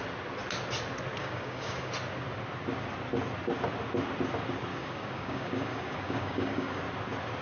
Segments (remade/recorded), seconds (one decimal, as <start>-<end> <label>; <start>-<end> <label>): 0.0-1.2 recorded; 1.2-1.9 remade; 1.9-4.7 recorded; 4.7-6.8 remade; 6.8-7.4 recorded

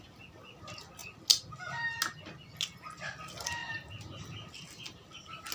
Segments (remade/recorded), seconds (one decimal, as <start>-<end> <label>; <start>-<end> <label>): 0.0-5.5 recorded